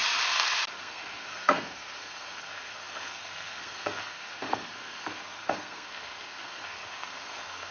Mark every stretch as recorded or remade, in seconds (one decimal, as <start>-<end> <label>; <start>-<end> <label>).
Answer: 0.0-0.8 recorded; 0.8-7.7 remade